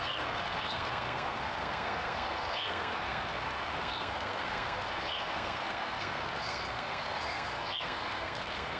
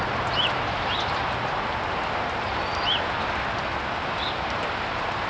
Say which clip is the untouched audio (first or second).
second